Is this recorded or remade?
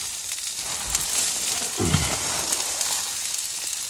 recorded